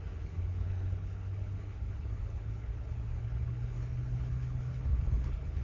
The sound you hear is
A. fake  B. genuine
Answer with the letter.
A